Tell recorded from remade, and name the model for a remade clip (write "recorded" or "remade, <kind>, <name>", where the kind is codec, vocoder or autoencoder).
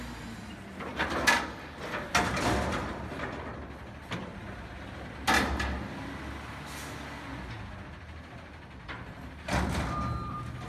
recorded